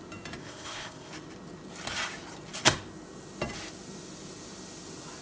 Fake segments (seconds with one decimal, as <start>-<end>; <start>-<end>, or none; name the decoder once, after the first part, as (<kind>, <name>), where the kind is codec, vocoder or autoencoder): 0.4-1.1 (codec, ZipCodec)